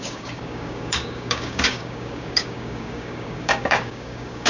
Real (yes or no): no